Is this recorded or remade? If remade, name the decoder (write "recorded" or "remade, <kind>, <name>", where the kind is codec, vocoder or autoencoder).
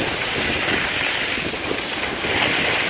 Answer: recorded